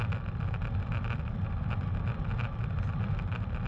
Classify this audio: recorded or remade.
recorded